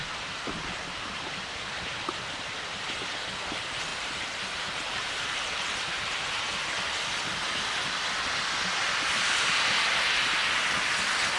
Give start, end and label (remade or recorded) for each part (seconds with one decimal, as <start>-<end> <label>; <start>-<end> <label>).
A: 0.0-3.9 recorded; 3.9-6.3 remade; 6.3-11.4 recorded